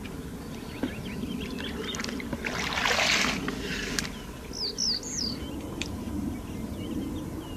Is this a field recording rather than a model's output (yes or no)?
yes